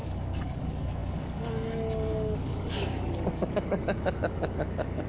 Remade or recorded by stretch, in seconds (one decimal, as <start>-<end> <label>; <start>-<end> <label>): 0.0-5.1 remade